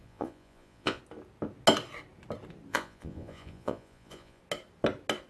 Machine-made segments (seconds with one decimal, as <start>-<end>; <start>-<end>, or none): 0.0-1.0; 2.7-4.4